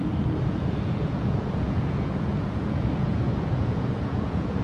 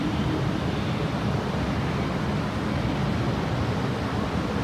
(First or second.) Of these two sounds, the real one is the second